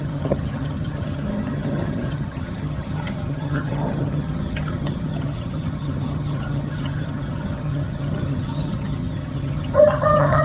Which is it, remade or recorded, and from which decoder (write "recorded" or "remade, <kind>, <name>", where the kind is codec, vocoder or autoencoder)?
remade, vocoder, HiFi-GAN